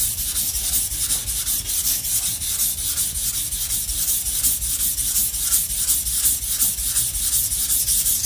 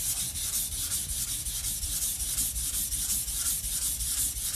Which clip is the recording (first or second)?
first